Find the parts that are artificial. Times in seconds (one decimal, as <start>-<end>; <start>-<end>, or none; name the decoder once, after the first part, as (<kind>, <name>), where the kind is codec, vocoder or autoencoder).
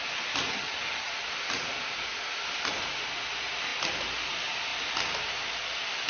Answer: 0.5-1.1 (vocoder, HiFi-GAN)